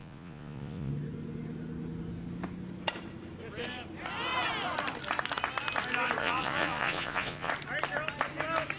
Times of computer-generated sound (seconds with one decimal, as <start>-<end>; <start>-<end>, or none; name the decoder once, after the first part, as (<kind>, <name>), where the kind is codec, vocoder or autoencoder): 0.0-0.9 (vocoder, Vocos); 6.2-7.5